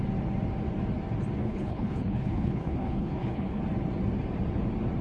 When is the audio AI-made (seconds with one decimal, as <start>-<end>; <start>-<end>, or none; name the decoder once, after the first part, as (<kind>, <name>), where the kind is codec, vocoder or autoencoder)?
1.4-3.6 (codec, HILCodec)